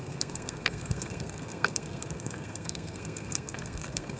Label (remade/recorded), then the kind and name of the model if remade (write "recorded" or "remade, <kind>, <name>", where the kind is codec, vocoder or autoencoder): remade, codec, SNAC